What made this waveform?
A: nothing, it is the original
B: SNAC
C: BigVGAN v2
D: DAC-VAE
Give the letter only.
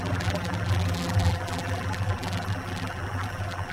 C